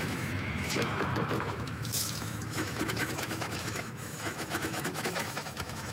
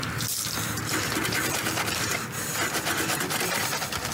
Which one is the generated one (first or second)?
first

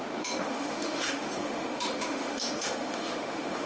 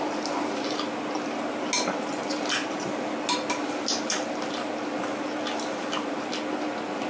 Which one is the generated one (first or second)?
first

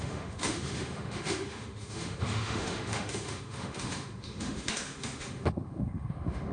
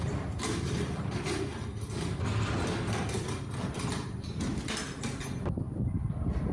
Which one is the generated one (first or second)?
first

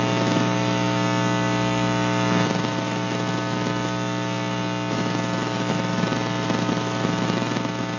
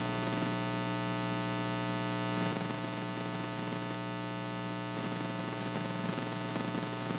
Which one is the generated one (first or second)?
first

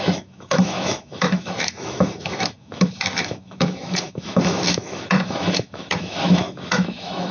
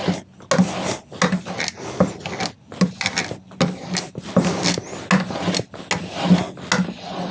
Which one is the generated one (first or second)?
first